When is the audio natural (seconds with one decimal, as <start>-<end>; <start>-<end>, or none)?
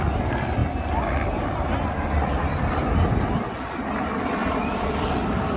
0.0-4.4; 4.9-5.6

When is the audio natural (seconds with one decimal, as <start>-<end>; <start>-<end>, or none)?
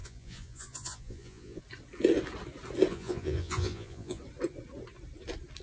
1.6-2.9; 4.2-5.6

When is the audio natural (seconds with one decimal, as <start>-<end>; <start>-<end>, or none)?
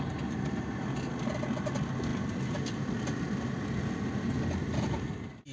0.0-5.5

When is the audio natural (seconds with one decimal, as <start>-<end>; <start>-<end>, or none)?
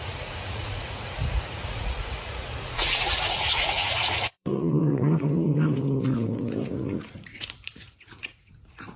none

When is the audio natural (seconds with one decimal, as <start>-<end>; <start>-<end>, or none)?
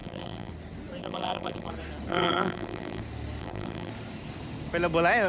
0.5-1.0; 1.7-2.1; 3.0-3.4; 3.9-5.3